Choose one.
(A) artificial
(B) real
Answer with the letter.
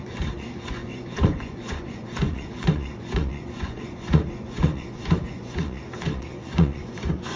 A